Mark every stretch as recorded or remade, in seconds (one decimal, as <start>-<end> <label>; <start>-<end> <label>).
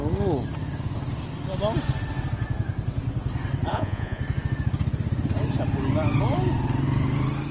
0.0-3.7 recorded; 3.7-4.2 remade; 4.2-7.5 recorded